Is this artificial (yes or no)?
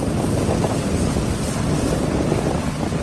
no